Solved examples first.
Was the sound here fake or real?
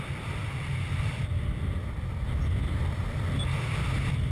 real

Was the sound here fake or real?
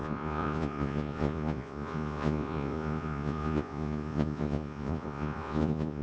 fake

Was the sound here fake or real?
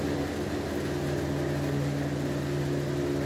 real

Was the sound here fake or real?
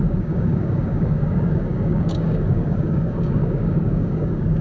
fake